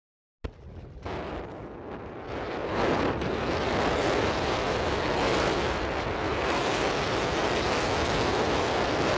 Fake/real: real